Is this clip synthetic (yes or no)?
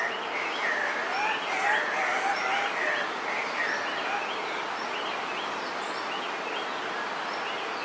no